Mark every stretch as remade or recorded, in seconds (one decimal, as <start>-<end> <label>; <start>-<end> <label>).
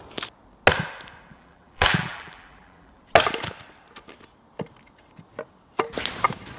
0.0-1.3 recorded; 1.3-3.0 remade; 3.0-6.6 recorded